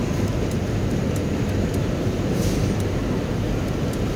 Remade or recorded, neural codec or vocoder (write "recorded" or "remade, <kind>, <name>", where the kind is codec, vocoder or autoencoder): recorded